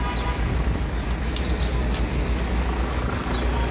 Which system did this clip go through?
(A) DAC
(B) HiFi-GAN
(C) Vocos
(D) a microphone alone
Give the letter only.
D